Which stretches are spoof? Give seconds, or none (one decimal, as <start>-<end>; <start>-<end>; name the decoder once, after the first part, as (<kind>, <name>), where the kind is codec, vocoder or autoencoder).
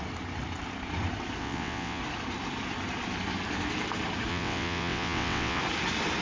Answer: 1.4-2.0 (vocoder, WaveNeXt); 4.3-5.6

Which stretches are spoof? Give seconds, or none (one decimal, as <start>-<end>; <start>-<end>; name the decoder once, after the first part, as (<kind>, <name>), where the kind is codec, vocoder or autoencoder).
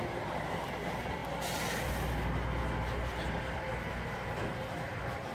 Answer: none